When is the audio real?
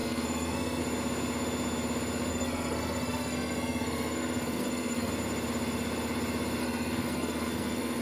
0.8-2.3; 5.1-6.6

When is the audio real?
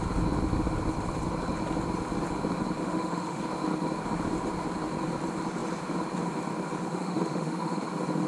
0.0-2.8; 3.4-6.9; 7.9-8.3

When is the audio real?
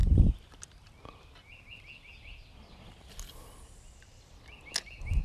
0.0-5.2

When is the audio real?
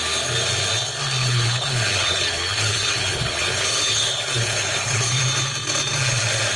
0.0-1.2; 5.2-6.6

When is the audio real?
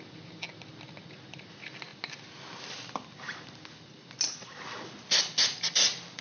0.0-6.2